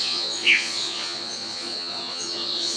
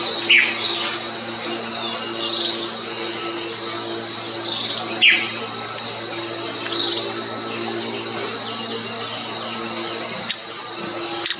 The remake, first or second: first